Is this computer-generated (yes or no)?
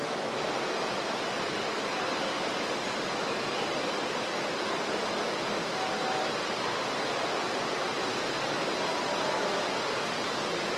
no